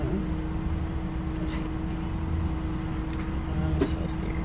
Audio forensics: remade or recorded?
recorded